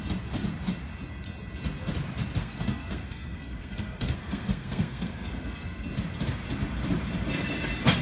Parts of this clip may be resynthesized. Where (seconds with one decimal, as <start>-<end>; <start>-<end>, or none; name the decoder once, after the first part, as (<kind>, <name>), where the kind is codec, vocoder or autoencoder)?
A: 2.4-5.8 (codec, SNAC)